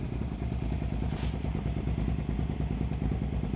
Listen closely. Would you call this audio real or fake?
real